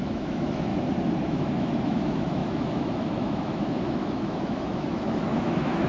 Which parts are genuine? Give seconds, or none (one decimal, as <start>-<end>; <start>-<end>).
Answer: 0.7-1.2